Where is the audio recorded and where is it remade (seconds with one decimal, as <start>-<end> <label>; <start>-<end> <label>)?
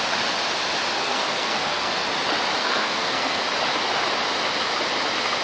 0.0-1.0 recorded; 1.0-1.9 remade; 1.9-2.6 recorded; 2.6-3.4 remade; 3.4-5.4 recorded